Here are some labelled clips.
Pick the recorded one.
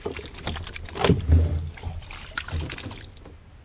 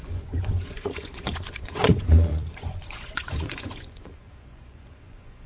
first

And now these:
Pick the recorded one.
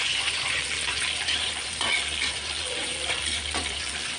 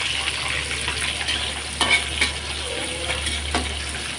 second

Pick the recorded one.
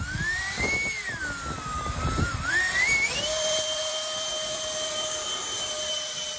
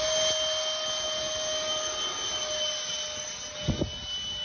second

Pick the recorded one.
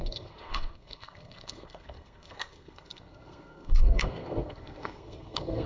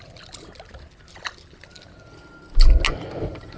second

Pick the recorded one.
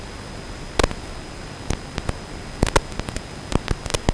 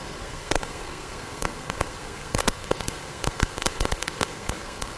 first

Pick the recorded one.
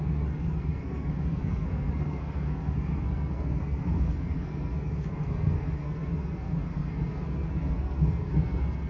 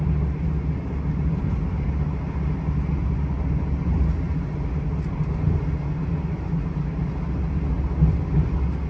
second